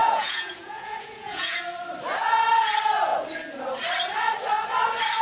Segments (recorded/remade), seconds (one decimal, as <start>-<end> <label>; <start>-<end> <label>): 0.0-1.6 remade; 1.6-5.2 recorded